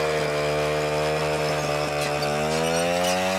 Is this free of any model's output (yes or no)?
yes